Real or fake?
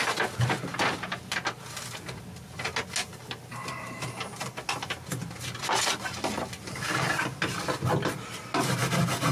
real